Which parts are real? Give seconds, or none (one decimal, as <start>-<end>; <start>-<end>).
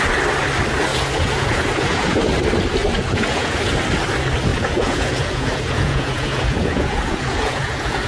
0.0-0.9; 2.2-2.8; 3.8-4.5